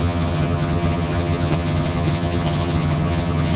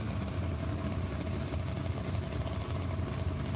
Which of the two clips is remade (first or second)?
first